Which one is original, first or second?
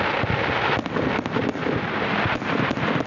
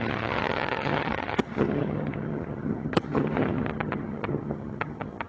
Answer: first